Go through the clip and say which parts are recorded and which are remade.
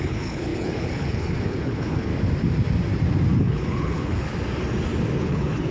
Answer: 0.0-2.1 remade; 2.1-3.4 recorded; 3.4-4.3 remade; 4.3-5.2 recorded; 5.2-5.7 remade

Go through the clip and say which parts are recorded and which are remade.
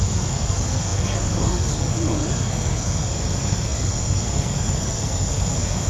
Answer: 0.0-5.9 remade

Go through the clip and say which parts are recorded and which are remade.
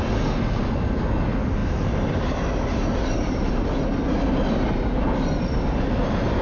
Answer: 0.0-1.6 recorded; 1.6-3.5 remade; 3.5-6.4 recorded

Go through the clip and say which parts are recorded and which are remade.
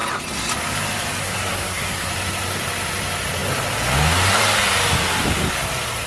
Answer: 0.0-1.2 recorded; 1.2-2.1 remade; 2.1-6.1 recorded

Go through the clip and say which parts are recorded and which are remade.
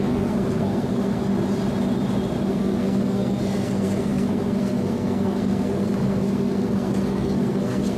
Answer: 0.0-1.3 remade; 1.3-2.5 recorded; 2.5-8.0 remade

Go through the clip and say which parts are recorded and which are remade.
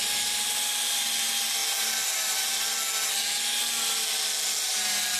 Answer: 0.0-5.2 recorded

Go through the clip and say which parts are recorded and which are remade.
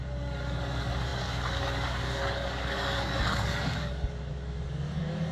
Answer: 0.0-5.3 remade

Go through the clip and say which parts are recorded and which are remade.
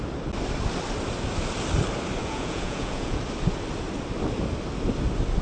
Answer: 0.0-2.2 recorded; 2.2-3.2 remade; 3.2-5.4 recorded